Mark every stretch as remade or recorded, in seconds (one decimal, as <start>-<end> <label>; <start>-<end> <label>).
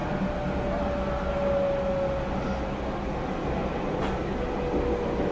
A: 0.0-5.3 recorded